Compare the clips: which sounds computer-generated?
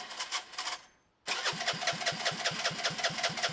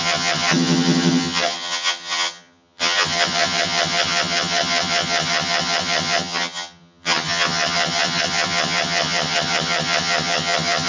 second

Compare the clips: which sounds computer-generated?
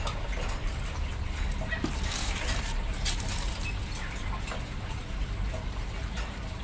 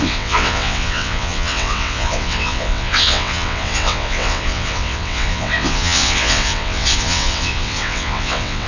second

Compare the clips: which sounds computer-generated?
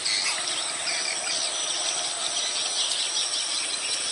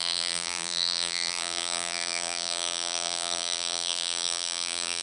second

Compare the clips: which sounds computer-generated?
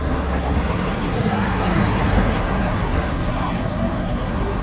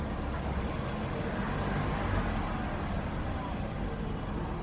first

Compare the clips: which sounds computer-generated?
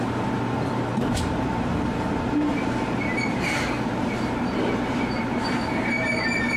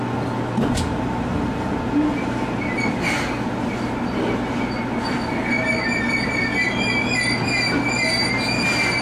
first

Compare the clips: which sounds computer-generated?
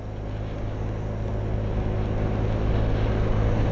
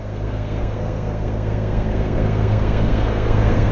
second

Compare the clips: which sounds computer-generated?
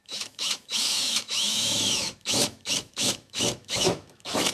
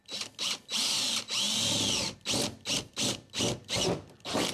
first